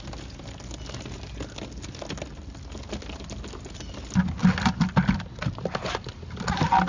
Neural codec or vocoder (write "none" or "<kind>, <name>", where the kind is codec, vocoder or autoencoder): none